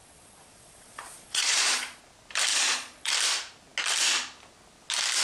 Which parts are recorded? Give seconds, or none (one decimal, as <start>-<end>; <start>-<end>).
2.0-2.5; 3.1-5.2